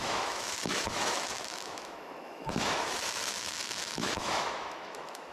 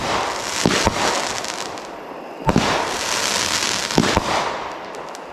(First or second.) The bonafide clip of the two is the second